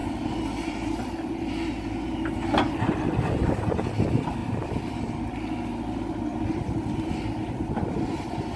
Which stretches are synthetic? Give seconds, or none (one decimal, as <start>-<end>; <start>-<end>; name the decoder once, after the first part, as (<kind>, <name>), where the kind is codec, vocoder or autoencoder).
0.0-2.1 (vocoder, BigVGAN v2); 4.4-5.0; 6.3-8.6